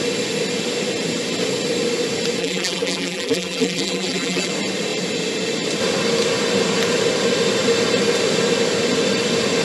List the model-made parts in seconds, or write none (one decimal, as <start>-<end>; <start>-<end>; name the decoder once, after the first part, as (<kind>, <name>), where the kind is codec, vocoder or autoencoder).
2.4-4.5 (vocoder, BigVGAN v2)